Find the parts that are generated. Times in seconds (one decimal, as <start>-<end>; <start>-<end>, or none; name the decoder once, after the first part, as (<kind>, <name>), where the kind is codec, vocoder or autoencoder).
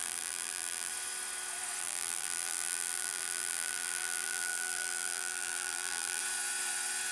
0.0-0.9 (vocoder, BigVGAN v2); 1.8-6.2